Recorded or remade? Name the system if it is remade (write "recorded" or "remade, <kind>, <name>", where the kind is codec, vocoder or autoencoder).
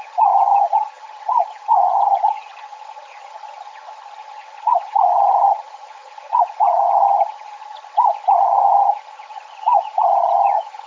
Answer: remade, vocoder, HiFi-GAN